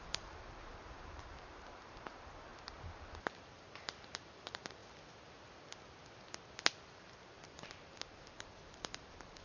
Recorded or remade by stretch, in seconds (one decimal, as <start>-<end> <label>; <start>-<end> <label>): 0.0-2.5 remade; 2.5-3.3 recorded; 3.3-4.8 remade; 4.8-6.9 recorded; 6.9-9.4 remade